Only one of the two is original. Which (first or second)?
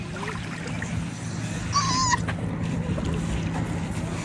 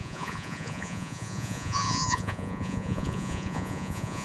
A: first